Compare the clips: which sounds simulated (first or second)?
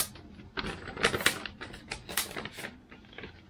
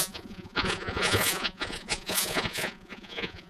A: second